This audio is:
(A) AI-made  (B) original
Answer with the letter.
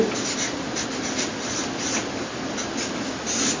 B